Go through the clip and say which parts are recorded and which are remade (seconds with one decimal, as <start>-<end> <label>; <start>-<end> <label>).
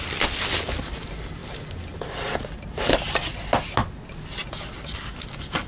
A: 0.0-5.7 recorded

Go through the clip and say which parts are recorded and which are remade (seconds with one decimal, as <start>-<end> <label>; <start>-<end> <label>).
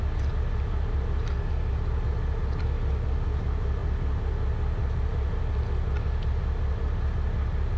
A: 0.0-7.8 recorded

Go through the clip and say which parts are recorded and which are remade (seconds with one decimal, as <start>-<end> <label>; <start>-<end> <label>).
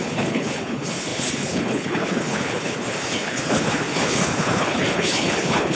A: 0.0-5.7 remade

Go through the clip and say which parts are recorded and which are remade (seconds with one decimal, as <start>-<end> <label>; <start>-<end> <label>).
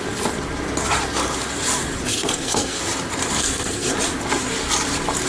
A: 0.0-2.1 recorded; 2.1-2.8 remade; 2.8-3.4 recorded; 3.4-3.9 remade; 3.9-5.3 recorded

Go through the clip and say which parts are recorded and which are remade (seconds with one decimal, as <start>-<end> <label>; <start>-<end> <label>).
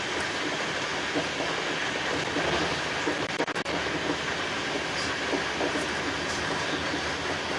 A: 0.0-7.6 recorded